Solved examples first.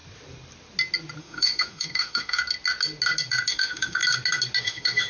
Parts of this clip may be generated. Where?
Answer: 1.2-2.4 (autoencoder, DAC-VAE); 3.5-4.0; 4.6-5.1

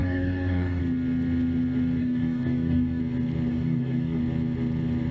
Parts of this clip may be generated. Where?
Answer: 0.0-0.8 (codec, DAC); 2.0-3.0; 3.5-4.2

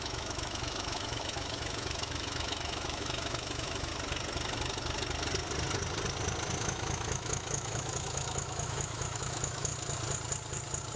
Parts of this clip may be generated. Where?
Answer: 0.0-3.9 (autoencoder, DAC-VAE); 6.6-9.7

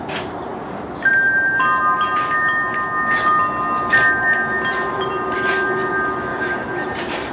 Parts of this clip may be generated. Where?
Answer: 6.3-7.3 (vocoder, BigVGAN v2)

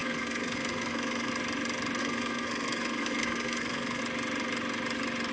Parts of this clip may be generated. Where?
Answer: 0.0-1.3 (codec, SNAC); 2.0-4.0

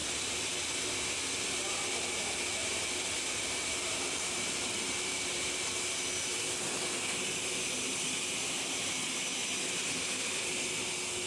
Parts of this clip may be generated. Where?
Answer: 2.6-5.8 (vocoder, BigVGAN v2)

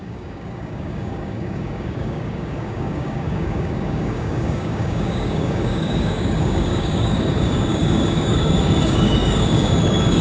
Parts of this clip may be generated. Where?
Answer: 0.0-10.2 (codec, DAC)